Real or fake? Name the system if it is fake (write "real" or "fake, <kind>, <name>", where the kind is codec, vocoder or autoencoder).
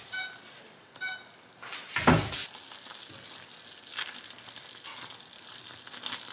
real